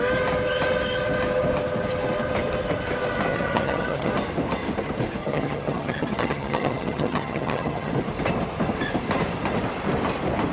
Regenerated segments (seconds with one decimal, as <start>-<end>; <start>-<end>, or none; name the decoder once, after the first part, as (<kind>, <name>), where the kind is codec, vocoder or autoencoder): 3.3-4.1 (vocoder, HiFi-GAN); 5.2-7.9